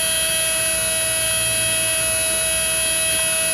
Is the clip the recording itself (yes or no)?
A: yes